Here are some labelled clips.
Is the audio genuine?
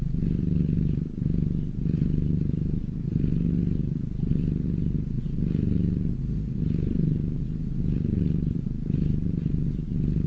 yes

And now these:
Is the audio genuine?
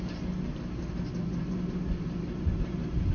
yes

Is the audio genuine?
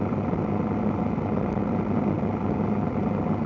yes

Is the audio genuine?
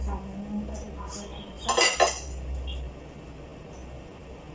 yes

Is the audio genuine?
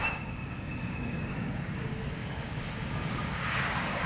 no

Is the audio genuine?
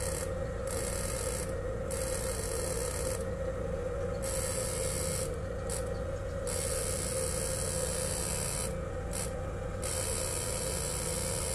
yes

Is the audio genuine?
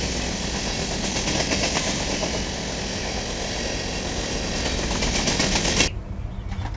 yes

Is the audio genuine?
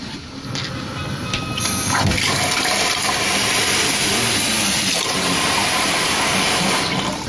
yes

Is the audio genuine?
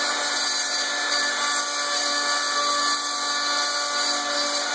yes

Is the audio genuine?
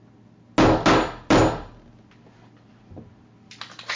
yes